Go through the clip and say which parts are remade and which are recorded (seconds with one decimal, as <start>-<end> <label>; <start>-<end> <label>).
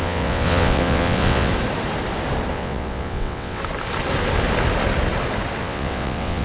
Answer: 0.0-1.5 remade; 1.5-2.5 recorded; 2.5-3.6 remade; 3.6-5.6 recorded; 5.6-6.4 remade